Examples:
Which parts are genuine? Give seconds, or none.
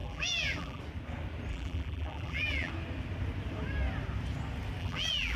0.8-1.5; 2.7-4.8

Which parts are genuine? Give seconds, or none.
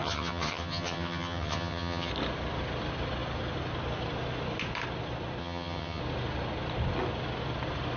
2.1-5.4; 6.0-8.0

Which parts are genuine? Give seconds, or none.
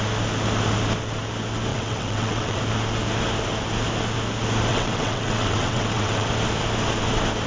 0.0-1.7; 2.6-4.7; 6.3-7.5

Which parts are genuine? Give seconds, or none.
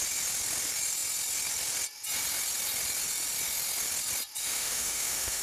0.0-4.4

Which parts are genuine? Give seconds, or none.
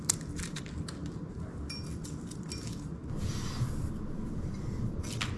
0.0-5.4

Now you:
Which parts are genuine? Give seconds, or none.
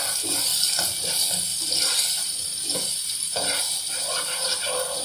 0.0-0.5; 1.1-1.5; 3.6-5.0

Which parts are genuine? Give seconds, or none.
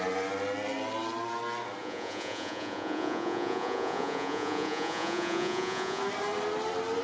0.0-1.8; 6.0-7.0